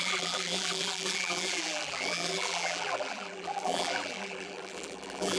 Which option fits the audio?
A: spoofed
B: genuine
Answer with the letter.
A